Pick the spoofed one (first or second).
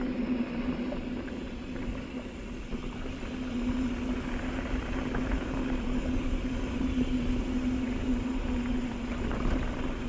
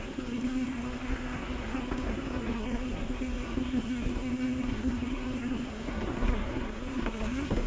second